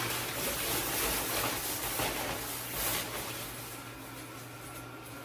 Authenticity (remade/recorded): recorded